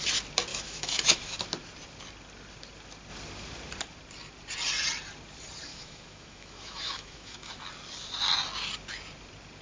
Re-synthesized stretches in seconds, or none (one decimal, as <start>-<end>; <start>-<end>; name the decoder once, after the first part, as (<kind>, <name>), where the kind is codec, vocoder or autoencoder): 0.5-1.4 (autoencoder, DAC-VAE); 5.7-7.5